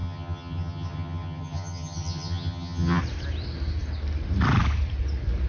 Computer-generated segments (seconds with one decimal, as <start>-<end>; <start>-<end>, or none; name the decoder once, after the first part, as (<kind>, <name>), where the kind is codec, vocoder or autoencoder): 0.0-3.0 (vocoder, HiFi-GAN)